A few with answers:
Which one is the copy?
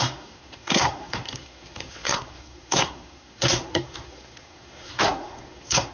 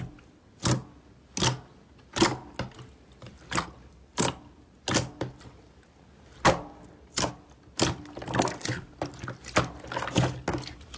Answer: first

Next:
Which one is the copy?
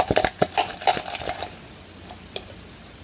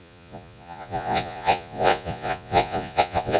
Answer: second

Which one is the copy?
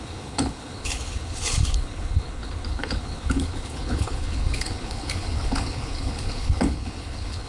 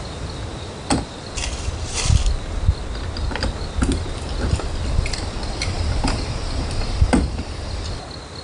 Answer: first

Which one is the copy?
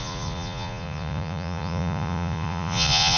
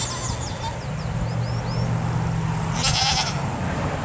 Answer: first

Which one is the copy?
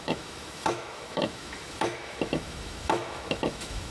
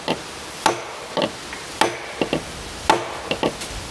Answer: first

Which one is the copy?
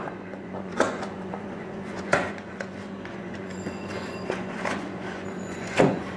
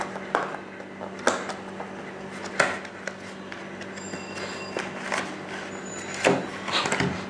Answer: first